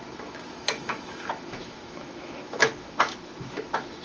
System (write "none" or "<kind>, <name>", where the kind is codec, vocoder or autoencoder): autoencoder, DAC-VAE